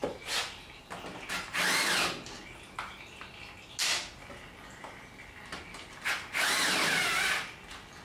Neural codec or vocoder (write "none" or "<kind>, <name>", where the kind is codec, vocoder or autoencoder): none